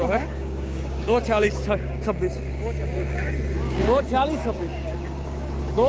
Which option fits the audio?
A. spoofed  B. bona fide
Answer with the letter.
A